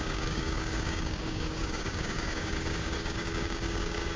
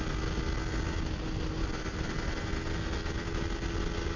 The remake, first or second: first